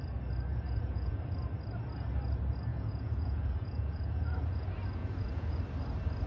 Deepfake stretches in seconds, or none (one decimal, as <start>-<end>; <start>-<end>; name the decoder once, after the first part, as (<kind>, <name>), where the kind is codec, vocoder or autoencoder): 0.5-1.2 (vocoder, Vocos); 2.7-4.5; 5.0-5.6